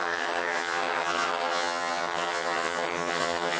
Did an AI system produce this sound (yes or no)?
yes